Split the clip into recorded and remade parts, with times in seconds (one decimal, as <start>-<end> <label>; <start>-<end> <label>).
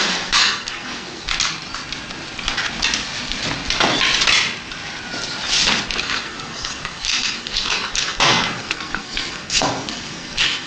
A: 0.0-1.3 remade; 1.3-6.0 recorded; 6.0-10.7 remade